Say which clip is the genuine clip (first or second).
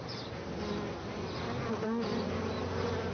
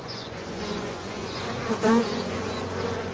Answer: first